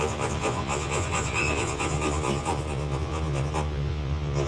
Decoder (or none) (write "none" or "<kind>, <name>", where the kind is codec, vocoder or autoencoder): vocoder, Vocos